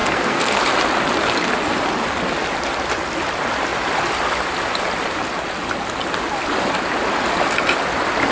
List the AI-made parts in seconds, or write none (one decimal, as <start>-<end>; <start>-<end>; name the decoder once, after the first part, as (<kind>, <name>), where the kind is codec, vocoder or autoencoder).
0.0-0.6 (codec, SNAC)